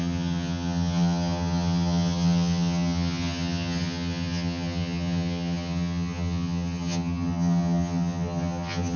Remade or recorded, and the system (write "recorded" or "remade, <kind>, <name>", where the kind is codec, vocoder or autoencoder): remade, vocoder, HiFi-GAN